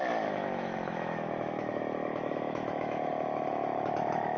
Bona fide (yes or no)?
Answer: no